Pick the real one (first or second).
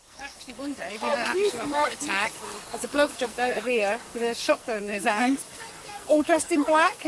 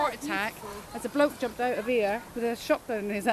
second